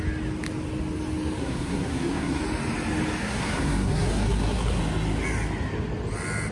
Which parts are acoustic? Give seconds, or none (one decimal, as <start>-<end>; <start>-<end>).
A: 0.0-1.4; 2.4-3.2; 4.8-6.5